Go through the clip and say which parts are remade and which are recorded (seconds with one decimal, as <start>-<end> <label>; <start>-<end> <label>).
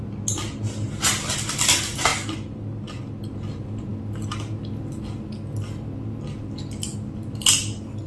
0.0-8.1 recorded